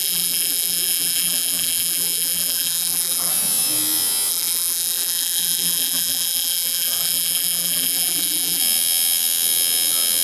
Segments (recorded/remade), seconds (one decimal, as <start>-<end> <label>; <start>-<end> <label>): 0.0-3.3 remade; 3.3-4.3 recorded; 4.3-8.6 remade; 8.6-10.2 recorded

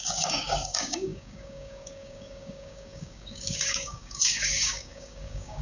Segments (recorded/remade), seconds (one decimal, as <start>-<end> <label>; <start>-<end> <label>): 0.0-5.6 remade

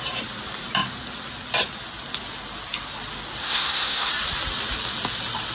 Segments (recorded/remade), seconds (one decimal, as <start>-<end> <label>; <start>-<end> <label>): 0.0-3.4 recorded; 3.4-4.1 remade; 4.1-5.5 recorded